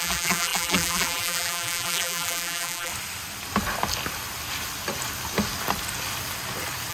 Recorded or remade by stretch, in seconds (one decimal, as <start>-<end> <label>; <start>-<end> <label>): 0.0-2.9 remade; 2.9-6.9 recorded